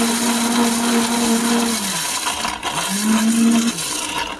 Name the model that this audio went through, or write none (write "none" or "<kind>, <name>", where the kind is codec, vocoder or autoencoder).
none